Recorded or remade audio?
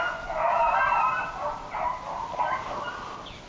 recorded